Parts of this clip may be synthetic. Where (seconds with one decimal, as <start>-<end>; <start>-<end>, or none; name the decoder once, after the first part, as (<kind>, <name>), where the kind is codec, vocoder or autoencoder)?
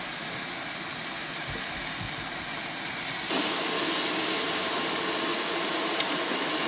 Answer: 5.3-6.3 (vocoder, Vocos)